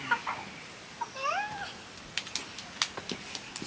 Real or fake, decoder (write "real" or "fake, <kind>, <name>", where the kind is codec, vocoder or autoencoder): real